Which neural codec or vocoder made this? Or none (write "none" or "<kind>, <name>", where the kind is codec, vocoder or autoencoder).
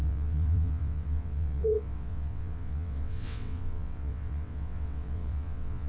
vocoder, WaveNeXt